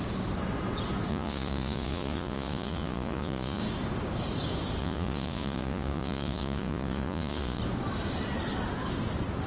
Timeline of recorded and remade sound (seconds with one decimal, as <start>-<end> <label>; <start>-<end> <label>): 0.0-1.1 recorded; 1.1-3.6 remade; 3.6-4.8 recorded; 4.8-7.6 remade; 7.6-9.5 recorded